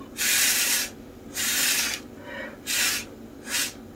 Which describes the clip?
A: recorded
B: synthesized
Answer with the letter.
A